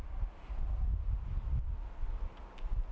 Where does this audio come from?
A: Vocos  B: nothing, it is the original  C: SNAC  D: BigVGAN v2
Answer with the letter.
B